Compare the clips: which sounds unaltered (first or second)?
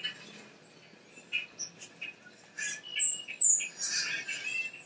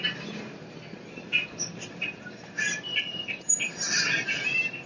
first